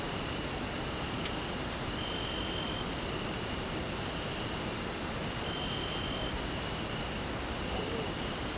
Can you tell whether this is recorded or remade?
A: recorded